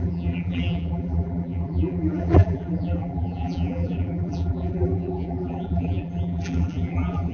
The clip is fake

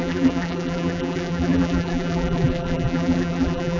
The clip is fake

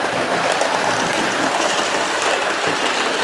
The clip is fake